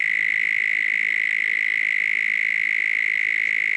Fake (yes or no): no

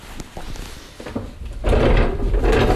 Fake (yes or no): yes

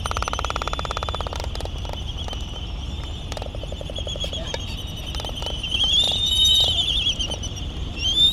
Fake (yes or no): yes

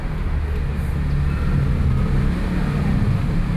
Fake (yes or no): no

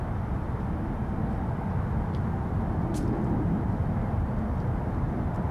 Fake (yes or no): no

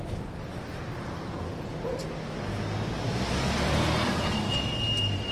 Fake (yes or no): no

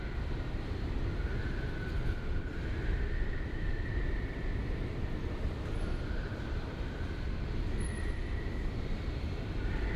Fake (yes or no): yes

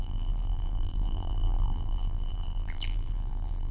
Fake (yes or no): yes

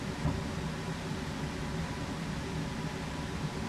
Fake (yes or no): yes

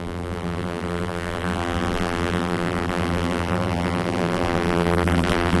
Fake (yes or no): yes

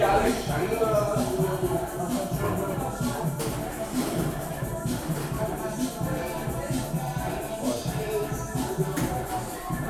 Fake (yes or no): yes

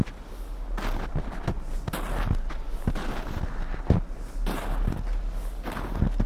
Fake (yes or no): no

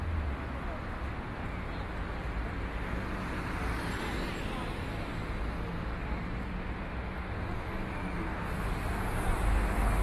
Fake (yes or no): no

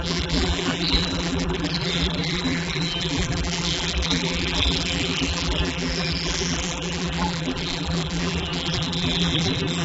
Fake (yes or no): yes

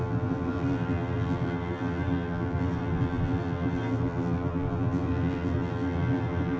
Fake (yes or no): yes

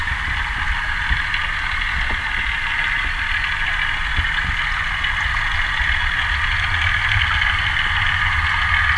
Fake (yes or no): no